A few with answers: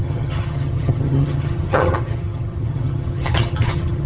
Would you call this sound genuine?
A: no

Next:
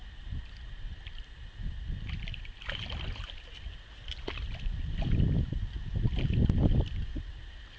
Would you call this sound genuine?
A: yes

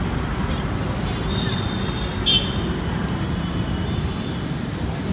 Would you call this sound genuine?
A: yes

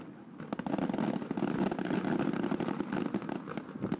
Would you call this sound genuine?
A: yes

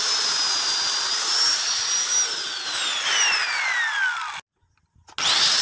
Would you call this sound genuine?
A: yes